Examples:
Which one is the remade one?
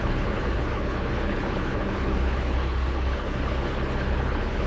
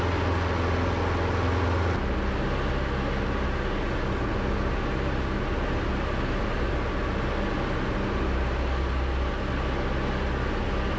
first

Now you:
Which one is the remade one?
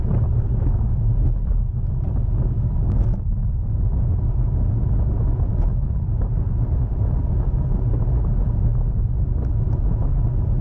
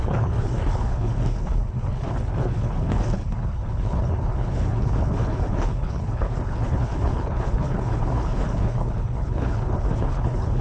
second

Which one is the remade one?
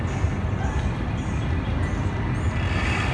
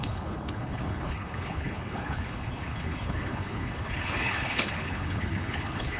second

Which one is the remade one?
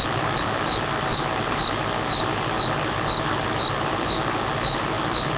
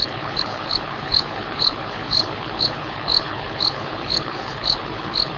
second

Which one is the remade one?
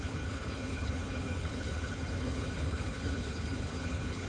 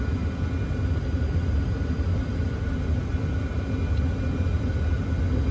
first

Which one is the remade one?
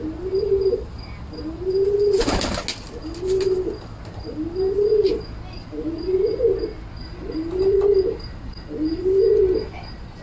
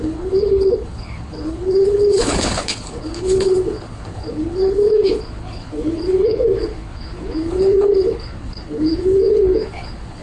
second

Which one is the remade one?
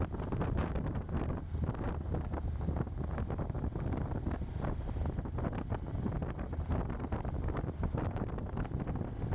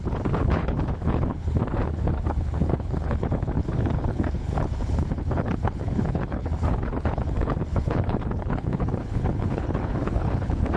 second